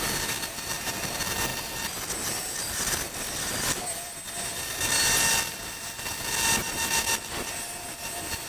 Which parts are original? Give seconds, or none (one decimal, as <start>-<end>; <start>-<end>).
0.0-8.5